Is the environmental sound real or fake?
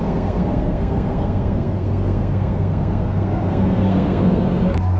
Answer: fake